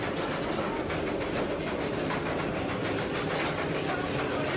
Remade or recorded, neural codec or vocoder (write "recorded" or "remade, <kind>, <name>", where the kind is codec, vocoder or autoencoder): recorded